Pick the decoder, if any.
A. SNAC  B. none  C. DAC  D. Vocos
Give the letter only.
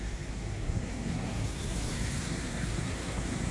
A